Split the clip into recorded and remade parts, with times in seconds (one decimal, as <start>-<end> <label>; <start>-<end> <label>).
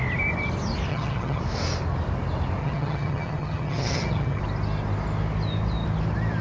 0.0-0.9 recorded; 0.9-1.4 remade; 1.4-2.6 recorded; 2.6-4.4 remade; 4.4-6.4 recorded